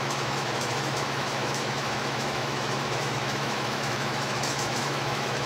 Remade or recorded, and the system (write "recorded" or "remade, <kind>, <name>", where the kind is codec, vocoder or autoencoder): remade, autoencoder, DAC-VAE